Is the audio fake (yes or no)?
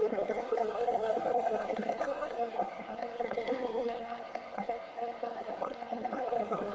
yes